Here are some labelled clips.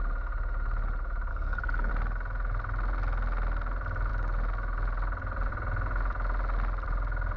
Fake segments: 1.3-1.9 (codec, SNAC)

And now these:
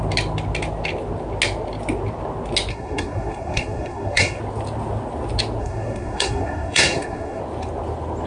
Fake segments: 2.7-4.4 (codec, SNAC); 5.6-7.4